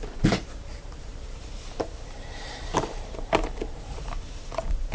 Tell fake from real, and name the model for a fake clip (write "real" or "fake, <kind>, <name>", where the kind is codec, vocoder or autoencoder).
fake, vocoder, BigVGAN v2